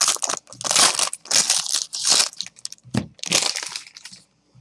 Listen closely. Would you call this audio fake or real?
real